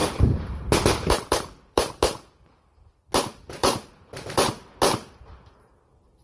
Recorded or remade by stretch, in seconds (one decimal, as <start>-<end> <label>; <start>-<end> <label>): 0.0-2.9 remade; 2.9-3.6 recorded; 3.6-4.4 remade; 4.4-6.2 recorded